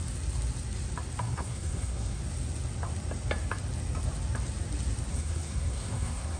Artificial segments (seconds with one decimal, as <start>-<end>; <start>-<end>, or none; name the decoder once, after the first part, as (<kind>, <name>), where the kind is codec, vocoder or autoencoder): 1.2-2.2 (codec, SNAC); 5.1-6.4